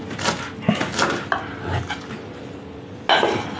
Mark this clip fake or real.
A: real